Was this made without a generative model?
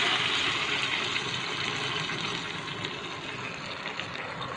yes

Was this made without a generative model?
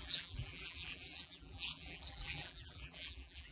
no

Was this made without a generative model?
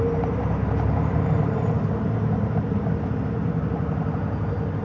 no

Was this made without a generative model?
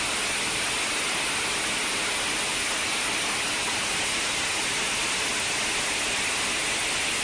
yes